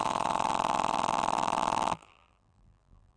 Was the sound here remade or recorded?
remade